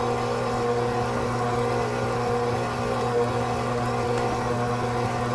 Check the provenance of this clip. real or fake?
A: real